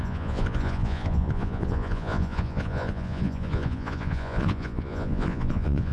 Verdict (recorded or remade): remade